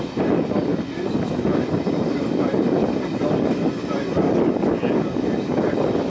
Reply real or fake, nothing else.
real